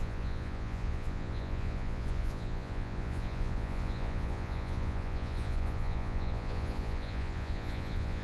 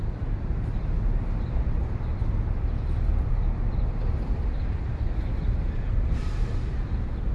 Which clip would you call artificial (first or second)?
first